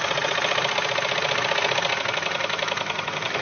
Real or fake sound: real